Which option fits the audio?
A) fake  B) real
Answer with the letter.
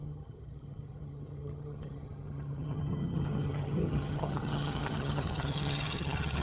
A